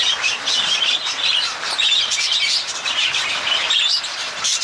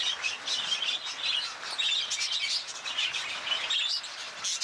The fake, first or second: first